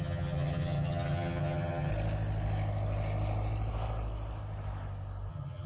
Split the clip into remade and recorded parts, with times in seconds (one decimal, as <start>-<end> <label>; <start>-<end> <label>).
0.0-1.9 remade; 1.9-5.3 recorded; 5.3-5.7 remade